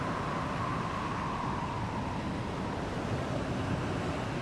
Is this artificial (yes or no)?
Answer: no